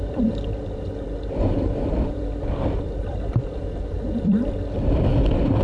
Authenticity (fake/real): fake